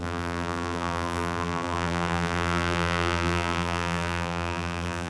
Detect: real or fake fake